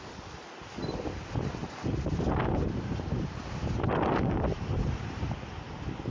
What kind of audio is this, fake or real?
real